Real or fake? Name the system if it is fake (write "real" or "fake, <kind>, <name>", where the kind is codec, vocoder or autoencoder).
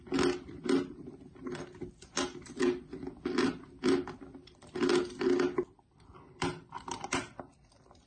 real